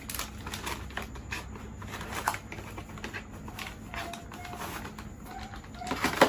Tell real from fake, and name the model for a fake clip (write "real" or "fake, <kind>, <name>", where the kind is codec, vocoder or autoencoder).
real